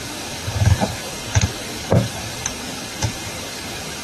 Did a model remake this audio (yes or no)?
yes